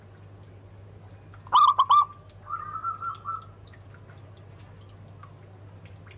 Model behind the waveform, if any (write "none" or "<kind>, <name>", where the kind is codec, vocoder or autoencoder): none